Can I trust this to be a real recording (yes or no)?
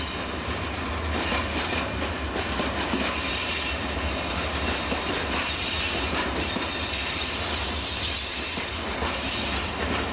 yes